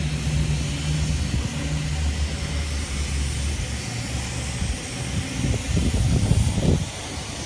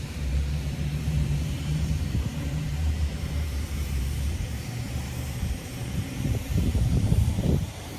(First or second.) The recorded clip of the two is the first